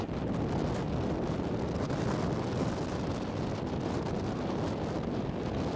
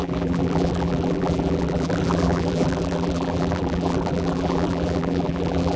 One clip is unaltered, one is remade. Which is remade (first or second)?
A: second